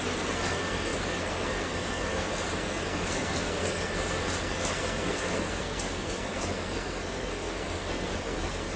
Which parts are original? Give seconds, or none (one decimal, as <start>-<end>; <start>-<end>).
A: none